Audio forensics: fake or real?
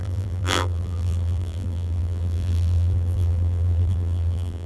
fake